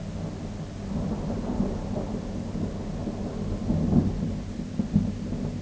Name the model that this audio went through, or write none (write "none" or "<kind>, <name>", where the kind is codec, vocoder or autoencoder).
none